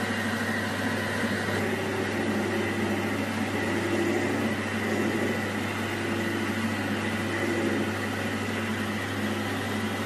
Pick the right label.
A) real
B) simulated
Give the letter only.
A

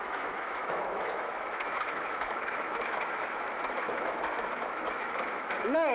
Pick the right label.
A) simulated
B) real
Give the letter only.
A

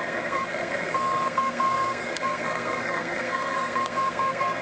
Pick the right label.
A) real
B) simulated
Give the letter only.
B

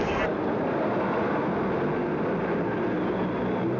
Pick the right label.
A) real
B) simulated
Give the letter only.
A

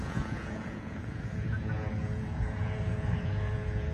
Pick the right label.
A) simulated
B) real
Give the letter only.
A